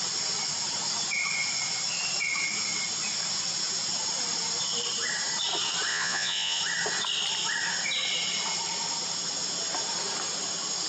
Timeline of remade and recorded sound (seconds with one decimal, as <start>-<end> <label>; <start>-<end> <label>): 0.0-5.9 recorded; 5.9-6.6 remade; 6.6-10.9 recorded